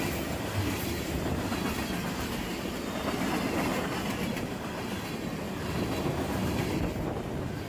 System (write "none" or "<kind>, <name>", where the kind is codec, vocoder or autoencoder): none